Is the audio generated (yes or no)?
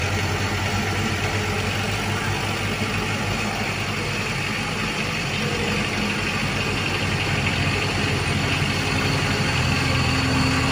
no